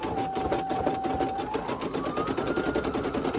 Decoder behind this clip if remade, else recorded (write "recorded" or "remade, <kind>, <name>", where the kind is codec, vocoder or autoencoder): recorded